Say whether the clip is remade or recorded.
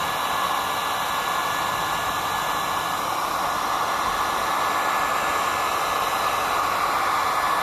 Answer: recorded